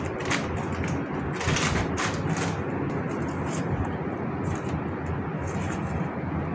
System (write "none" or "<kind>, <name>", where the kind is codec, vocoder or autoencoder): none